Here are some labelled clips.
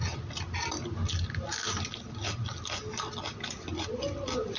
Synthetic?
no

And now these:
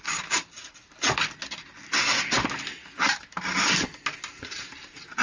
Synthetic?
no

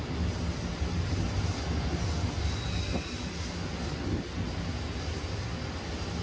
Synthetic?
no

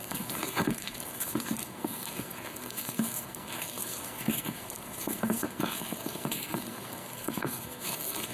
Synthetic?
yes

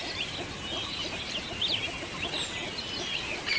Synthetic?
no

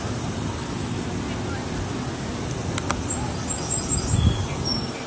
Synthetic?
no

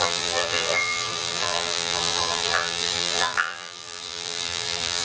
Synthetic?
yes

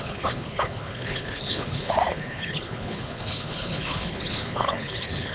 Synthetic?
yes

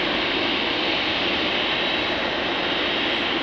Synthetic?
no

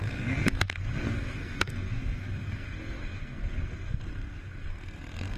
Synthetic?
yes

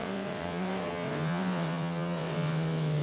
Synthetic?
yes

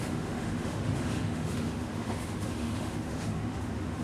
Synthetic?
yes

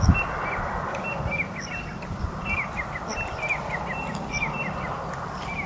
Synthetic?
no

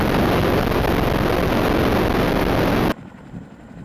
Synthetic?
no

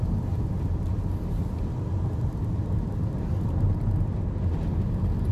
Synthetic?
no